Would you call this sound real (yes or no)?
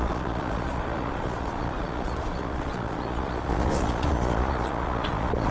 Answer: no